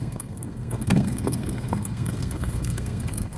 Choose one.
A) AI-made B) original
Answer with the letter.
A